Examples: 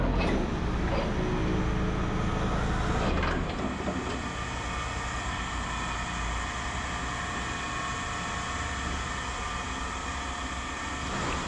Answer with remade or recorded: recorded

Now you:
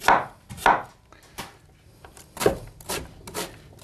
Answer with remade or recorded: recorded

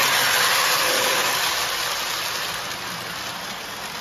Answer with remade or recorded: recorded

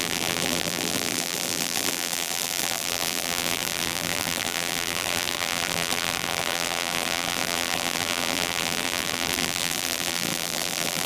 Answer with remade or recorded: remade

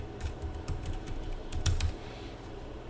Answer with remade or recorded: remade